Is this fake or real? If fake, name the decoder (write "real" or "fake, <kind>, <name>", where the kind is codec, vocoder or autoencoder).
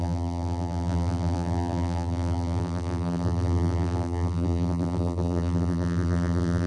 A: fake, vocoder, BigVGAN v2